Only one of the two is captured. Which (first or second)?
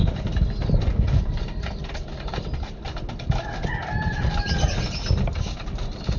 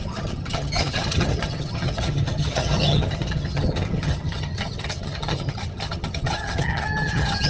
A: first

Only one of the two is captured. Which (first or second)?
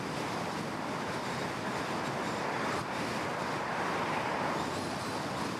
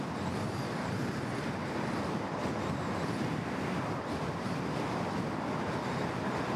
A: second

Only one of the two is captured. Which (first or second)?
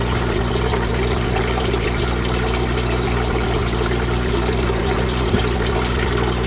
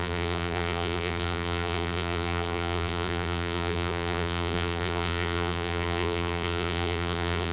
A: first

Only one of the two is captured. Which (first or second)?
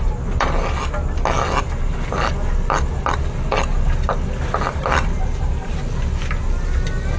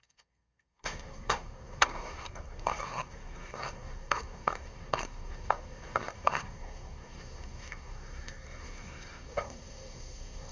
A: first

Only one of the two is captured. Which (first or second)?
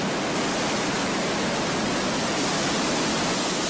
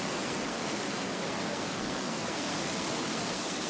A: first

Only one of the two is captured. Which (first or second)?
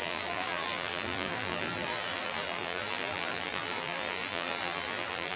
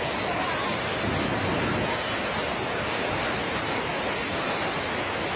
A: second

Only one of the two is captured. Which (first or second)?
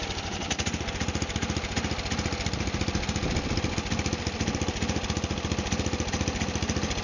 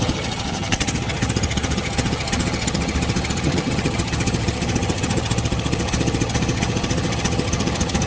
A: first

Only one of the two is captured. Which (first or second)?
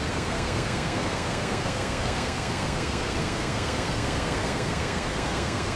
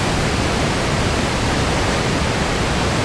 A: second